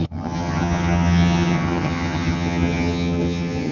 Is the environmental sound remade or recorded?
remade